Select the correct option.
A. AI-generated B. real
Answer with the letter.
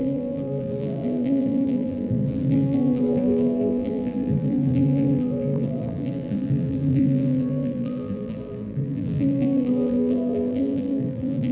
A